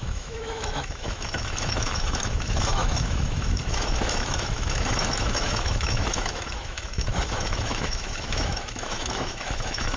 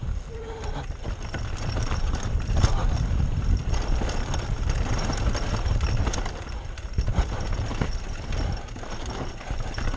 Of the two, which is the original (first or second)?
second